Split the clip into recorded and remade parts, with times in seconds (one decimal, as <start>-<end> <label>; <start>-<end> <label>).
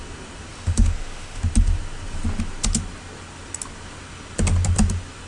0.0-0.5 recorded; 0.5-1.4 remade; 1.4-5.3 recorded